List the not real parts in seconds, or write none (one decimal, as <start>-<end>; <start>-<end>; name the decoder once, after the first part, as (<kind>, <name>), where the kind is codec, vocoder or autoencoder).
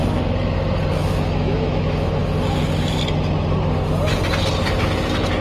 0.9-2.2 (autoencoder, DAC-VAE)